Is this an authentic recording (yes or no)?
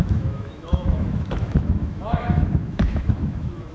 no